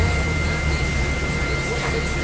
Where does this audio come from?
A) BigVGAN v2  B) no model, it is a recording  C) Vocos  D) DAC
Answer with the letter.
B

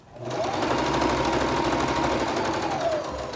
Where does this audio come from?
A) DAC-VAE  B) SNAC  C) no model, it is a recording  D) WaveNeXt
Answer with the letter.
C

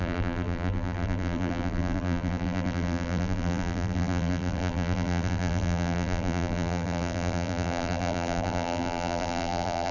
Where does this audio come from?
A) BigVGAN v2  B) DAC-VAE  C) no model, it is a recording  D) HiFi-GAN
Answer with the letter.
A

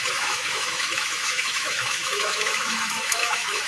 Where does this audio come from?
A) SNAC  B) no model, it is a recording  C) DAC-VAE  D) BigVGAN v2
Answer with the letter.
C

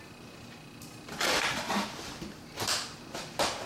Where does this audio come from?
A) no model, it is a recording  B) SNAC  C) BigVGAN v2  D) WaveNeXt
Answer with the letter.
A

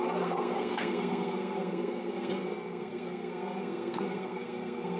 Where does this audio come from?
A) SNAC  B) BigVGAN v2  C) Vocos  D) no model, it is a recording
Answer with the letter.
A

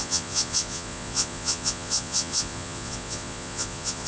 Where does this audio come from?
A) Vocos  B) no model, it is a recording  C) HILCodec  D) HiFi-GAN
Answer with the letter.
A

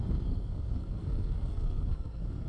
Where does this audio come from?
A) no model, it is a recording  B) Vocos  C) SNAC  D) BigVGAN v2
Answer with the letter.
C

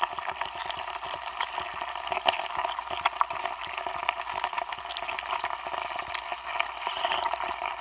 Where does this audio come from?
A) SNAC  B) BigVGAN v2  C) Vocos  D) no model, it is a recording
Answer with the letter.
D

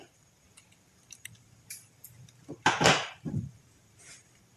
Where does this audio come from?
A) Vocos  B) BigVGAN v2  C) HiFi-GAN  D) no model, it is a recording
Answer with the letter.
B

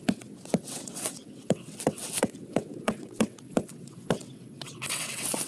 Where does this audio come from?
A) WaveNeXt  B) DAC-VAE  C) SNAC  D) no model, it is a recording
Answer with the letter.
A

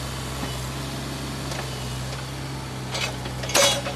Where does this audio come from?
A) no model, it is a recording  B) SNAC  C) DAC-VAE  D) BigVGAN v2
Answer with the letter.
A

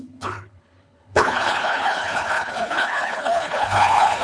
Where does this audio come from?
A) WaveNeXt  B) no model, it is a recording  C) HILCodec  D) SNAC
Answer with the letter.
C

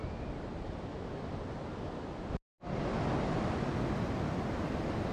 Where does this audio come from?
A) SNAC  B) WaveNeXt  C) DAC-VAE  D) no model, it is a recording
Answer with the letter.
D